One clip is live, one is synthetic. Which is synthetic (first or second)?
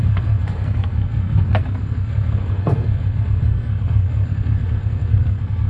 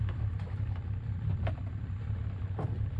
first